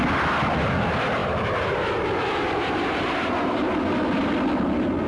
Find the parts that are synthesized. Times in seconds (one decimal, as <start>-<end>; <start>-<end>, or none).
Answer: 1.2-3.7